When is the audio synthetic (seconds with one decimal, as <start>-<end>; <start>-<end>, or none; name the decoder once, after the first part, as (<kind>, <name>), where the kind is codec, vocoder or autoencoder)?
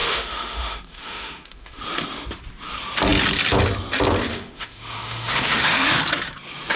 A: 0.0-1.8 (autoencoder, DAC-VAE); 4.3-6.0